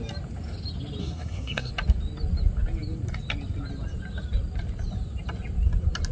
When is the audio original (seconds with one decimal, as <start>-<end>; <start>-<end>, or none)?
0.0-1.0; 1.7-6.1